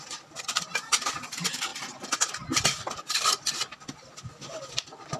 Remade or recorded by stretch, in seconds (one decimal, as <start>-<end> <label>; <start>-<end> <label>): 0.0-5.2 recorded